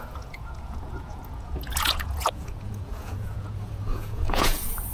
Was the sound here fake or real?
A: fake